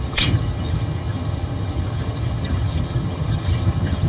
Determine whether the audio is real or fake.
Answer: fake